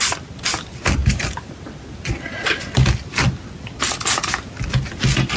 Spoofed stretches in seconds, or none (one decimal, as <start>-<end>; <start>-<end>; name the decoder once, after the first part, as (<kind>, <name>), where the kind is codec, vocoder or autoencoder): none